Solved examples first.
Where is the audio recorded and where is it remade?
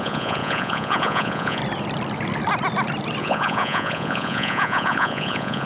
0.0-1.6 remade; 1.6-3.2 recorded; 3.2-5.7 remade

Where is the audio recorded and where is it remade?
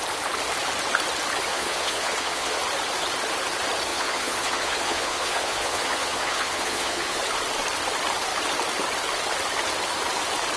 0.0-1.5 recorded; 1.5-2.6 remade; 2.6-3.9 recorded; 3.9-7.2 remade; 7.2-10.6 recorded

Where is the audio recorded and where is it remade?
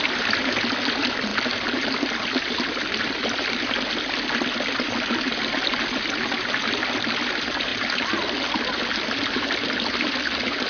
0.0-10.7 recorded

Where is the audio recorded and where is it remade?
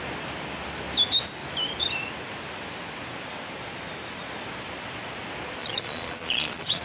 0.0-5.6 recorded; 5.6-6.8 remade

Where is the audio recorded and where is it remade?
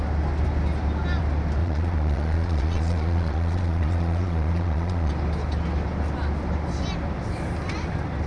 0.0-1.6 recorded; 1.6-5.1 remade; 5.1-8.3 recorded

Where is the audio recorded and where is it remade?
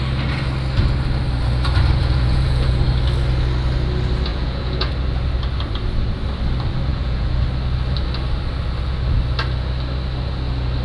0.0-2.0 recorded; 2.0-2.8 remade; 2.8-4.3 recorded; 4.3-4.9 remade; 4.9-6.9 recorded; 6.9-7.4 remade; 7.4-10.8 recorded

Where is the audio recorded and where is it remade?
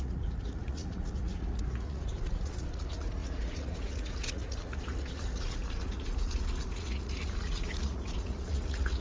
0.0-9.0 remade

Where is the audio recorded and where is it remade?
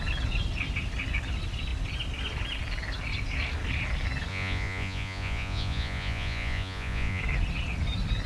0.0-4.3 recorded; 4.3-7.2 remade; 7.2-8.3 recorded